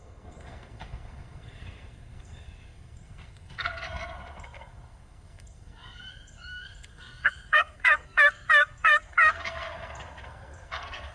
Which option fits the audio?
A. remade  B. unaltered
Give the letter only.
A